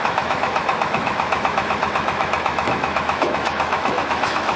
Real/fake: fake